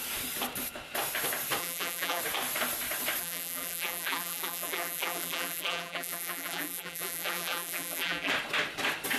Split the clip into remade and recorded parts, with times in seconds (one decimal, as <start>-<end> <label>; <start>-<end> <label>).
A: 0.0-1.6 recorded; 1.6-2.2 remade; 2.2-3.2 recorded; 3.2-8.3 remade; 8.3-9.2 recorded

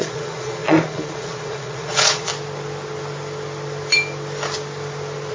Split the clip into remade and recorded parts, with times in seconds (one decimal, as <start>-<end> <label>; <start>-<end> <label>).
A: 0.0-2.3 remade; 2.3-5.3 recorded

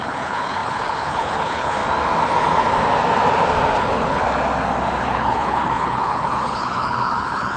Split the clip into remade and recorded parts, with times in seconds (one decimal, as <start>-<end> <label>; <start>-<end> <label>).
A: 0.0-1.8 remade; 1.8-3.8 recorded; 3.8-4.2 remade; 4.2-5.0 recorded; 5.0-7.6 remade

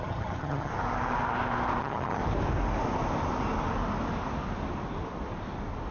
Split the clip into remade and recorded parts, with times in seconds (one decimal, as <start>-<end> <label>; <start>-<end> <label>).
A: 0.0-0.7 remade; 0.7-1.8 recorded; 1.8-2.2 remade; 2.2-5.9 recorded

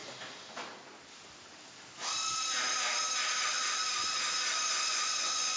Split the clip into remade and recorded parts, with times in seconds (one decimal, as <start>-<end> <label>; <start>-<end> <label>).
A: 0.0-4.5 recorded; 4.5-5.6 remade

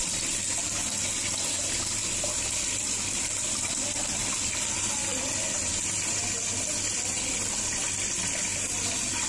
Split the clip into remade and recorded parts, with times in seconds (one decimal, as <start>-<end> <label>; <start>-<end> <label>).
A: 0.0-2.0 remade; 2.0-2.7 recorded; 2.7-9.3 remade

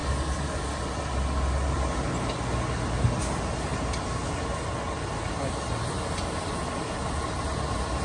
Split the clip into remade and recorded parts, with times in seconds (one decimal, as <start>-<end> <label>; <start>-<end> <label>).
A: 0.0-8.0 recorded